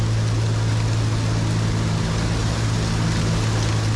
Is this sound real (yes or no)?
yes